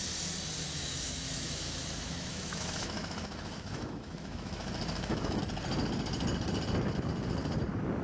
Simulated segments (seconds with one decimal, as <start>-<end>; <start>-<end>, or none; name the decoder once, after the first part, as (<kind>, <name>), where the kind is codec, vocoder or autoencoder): 0.6-5.4 (autoencoder, DAC-VAE)